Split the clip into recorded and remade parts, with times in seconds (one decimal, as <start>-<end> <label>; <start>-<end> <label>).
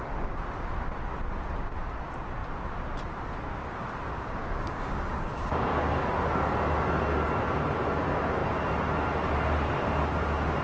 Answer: 0.0-4.1 recorded; 4.1-6.0 remade; 6.0-10.6 recorded